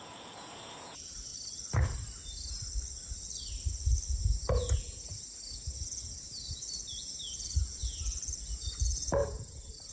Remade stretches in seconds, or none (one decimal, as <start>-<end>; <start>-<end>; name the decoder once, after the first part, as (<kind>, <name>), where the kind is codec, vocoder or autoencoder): 0.0-1.3 (vocoder, Vocos); 4.3-9.9